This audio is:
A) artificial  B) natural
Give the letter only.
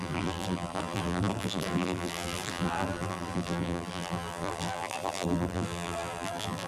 A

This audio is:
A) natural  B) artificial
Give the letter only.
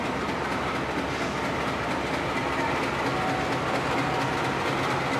A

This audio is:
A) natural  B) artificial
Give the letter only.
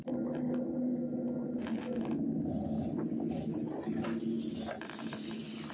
A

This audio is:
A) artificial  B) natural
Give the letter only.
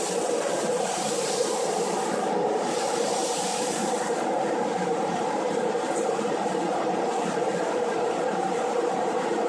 A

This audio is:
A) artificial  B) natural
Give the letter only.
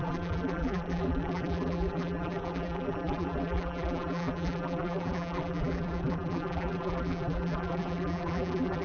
A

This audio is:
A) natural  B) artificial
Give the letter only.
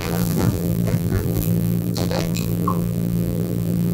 B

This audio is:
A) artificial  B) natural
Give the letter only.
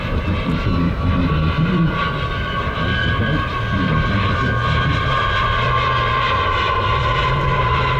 A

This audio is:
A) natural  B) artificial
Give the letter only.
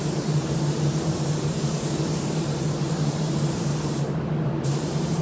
B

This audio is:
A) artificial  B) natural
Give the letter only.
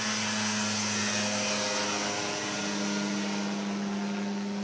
B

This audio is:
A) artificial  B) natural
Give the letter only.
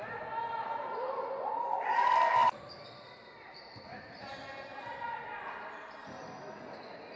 A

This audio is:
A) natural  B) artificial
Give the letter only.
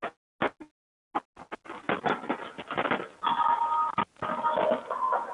A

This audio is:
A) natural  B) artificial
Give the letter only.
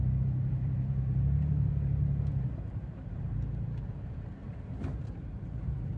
B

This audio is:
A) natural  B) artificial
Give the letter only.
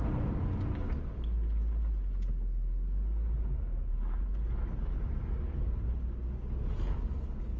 A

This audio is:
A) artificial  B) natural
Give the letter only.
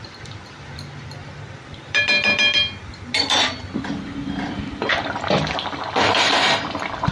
A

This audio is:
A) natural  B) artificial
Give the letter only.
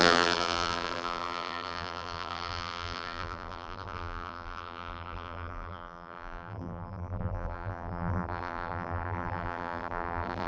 B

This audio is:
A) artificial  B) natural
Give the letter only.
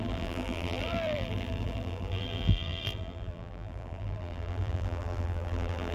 A